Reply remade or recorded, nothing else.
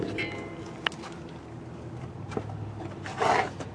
recorded